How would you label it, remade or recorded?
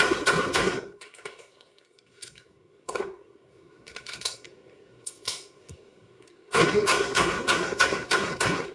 remade